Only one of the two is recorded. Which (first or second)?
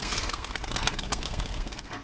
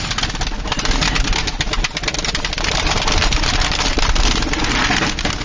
second